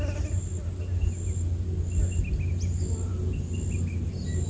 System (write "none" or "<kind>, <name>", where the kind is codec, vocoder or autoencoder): none